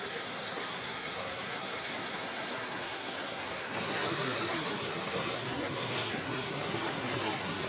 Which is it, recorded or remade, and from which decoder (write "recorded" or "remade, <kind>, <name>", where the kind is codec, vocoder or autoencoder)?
remade, codec, SNAC